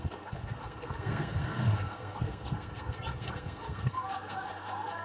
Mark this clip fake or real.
fake